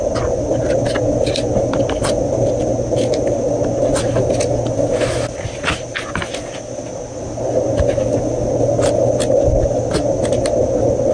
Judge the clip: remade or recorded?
recorded